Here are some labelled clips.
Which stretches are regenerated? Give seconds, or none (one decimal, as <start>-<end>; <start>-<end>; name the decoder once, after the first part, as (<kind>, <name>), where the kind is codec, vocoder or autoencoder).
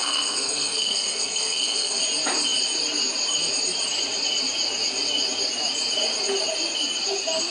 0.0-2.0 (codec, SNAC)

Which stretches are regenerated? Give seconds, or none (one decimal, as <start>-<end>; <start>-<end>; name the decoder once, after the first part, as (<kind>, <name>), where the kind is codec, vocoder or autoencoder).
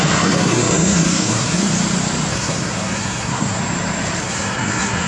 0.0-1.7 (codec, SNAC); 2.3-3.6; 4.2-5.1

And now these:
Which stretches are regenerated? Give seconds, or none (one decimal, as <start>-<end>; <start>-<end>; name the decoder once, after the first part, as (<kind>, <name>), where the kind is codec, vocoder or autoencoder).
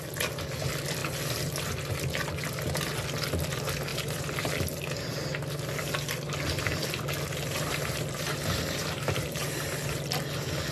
3.9-4.5 (vocoder, BigVGAN v2); 7.5-9.6